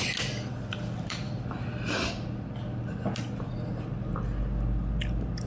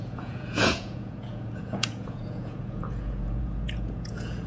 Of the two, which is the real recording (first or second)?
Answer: first